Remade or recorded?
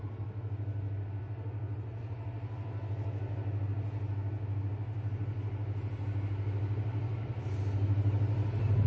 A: recorded